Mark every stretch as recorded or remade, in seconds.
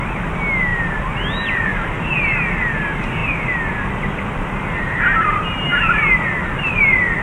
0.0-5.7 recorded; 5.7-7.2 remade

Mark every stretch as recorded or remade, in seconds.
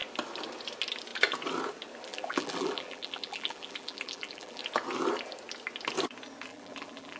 0.0-2.1 recorded; 2.1-4.6 remade; 4.6-6.5 recorded; 6.5-7.2 remade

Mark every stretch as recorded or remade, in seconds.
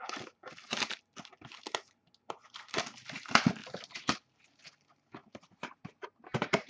0.0-3.6 recorded; 3.6-4.4 remade; 4.4-5.2 recorded; 5.2-6.7 remade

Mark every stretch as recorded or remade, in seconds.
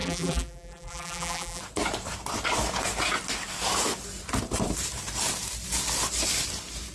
0.0-1.6 remade; 1.6-6.9 recorded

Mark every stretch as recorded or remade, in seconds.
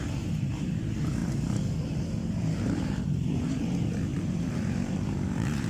0.0-5.7 remade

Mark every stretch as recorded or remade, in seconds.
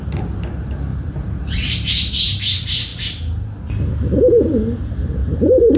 0.0-0.9 recorded; 0.9-2.4 remade; 2.4-5.2 recorded; 5.2-5.8 remade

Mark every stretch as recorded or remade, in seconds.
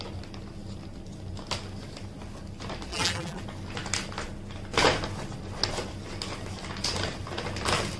0.0-2.9 recorded; 2.9-3.4 remade; 3.4-8.0 recorded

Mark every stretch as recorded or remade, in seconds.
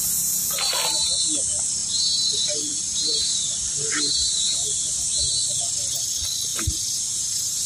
0.0-1.8 recorded; 1.8-5.0 remade; 5.0-6.5 recorded; 6.5-7.7 remade